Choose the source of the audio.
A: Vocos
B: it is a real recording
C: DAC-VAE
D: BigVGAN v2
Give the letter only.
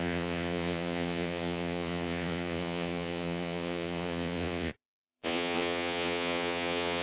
A